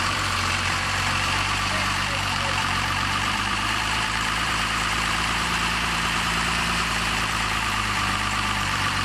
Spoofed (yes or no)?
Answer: yes